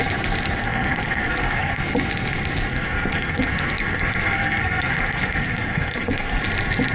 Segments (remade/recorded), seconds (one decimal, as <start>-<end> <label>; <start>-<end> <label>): 0.0-0.6 recorded; 0.6-1.8 remade; 1.8-2.7 recorded; 2.7-6.4 remade; 6.4-6.9 recorded